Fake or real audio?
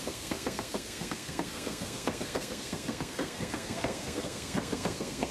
fake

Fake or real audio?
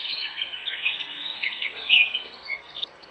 fake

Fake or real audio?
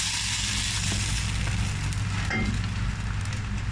real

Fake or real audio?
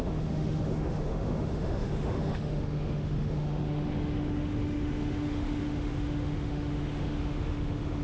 fake